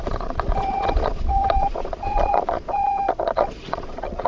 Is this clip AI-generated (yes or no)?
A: yes